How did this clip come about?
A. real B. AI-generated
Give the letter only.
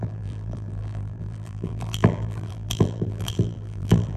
B